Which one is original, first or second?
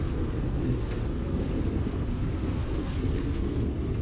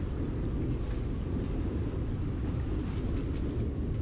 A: second